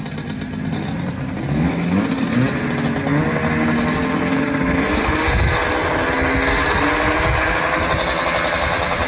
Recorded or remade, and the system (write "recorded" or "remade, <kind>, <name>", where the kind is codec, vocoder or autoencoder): recorded